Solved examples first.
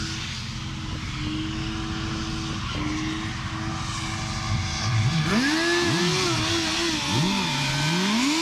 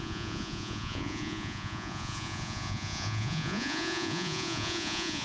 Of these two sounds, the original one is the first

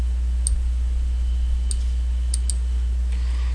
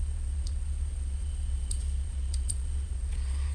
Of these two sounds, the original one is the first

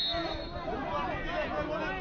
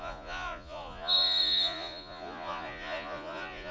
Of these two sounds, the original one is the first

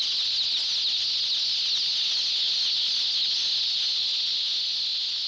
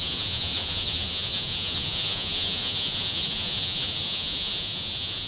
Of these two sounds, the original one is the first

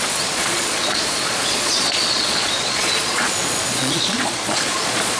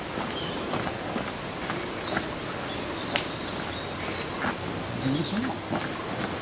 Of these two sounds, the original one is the second